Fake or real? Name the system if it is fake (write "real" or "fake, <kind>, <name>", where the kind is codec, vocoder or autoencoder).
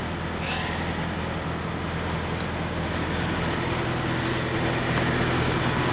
real